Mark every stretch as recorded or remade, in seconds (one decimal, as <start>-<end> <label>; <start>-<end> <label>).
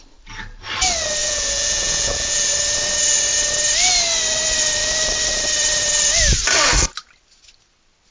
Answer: 0.0-1.2 recorded; 1.2-2.5 remade; 2.5-8.1 recorded